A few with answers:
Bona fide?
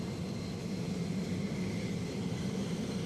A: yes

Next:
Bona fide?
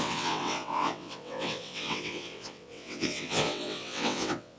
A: no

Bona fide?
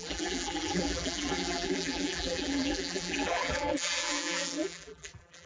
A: no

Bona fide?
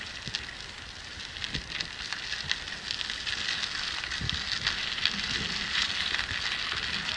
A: yes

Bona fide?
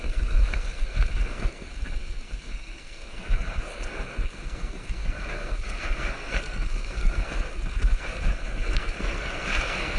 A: no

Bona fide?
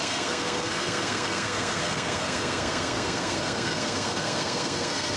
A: no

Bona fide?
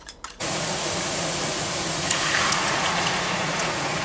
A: no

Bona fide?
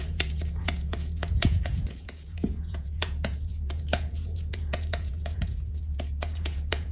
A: no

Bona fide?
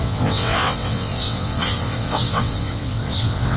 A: no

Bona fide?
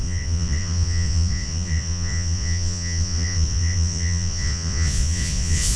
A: no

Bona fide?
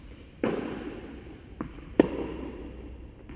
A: yes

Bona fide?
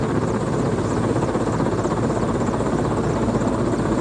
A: yes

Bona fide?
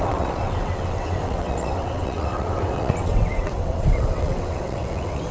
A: no